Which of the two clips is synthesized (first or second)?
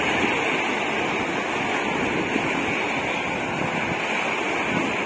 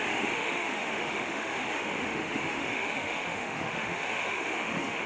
second